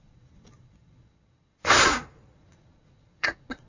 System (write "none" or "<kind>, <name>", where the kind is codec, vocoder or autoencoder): vocoder, Vocos